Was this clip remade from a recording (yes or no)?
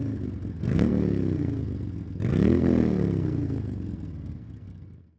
yes